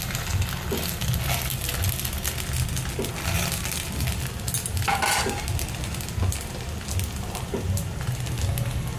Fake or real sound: real